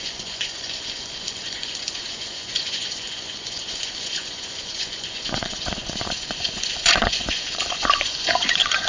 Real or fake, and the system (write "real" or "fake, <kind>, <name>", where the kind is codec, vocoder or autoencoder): fake, vocoder, Vocos